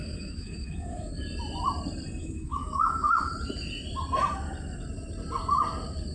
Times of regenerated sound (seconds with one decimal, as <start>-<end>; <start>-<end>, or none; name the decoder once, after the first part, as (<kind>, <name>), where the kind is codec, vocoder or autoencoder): 0.0-1.1 (autoencoder, DAC-VAE); 2.2-3.3